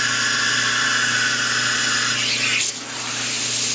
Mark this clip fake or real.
real